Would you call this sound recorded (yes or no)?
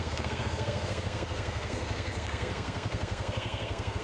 no